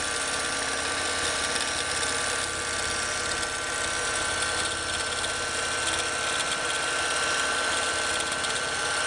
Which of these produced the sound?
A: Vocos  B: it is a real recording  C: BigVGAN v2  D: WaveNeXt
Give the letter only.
B